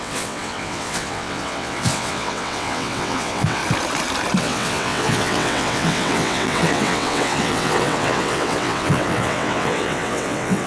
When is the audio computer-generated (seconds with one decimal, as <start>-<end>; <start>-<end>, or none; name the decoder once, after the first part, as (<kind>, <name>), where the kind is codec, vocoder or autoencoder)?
0.0-3.6 (vocoder, WaveNeXt); 4.4-10.7